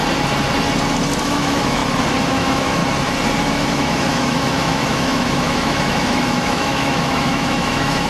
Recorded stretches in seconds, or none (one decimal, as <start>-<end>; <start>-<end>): 0.0-1.2; 1.8-2.3; 2.8-3.4